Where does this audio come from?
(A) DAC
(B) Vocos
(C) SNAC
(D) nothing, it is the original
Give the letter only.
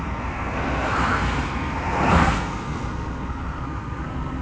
C